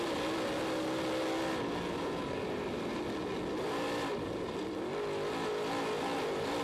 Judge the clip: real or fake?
real